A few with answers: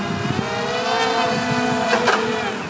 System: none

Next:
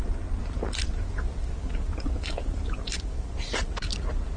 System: none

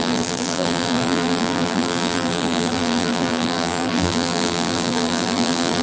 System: vocoder, BigVGAN v2